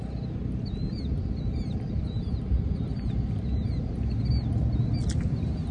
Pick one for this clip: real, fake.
real